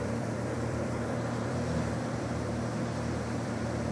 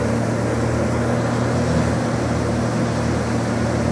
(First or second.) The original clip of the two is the second